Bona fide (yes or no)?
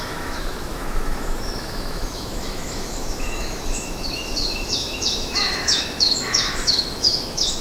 no